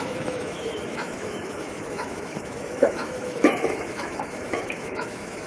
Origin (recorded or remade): remade